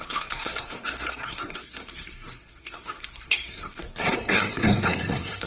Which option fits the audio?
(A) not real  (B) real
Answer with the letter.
A